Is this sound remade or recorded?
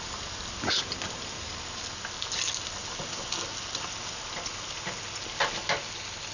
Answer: recorded